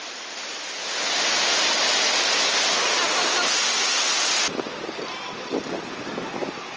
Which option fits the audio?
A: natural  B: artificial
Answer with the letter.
A